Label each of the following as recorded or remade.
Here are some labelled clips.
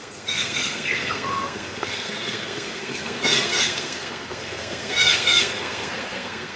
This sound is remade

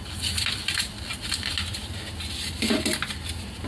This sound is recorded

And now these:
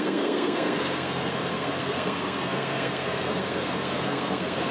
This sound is remade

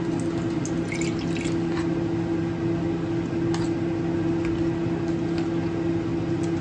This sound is recorded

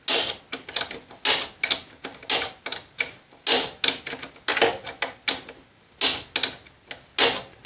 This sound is recorded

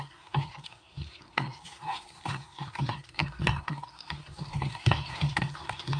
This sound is remade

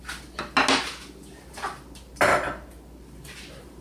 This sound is recorded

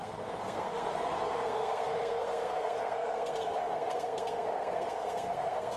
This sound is remade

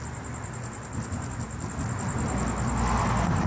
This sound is recorded